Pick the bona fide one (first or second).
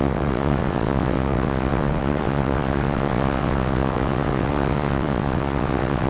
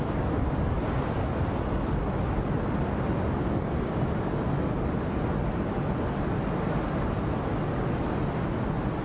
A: second